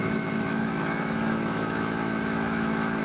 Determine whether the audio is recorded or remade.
remade